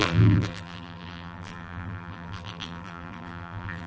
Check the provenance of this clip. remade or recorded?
remade